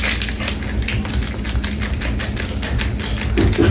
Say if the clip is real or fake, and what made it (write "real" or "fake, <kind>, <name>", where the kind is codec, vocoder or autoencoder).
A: real